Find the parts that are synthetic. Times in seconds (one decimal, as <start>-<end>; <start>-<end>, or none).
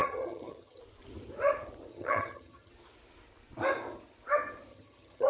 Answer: 0.0-0.8; 1.9-2.7; 4.7-5.3